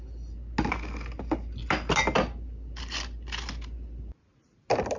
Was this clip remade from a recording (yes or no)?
no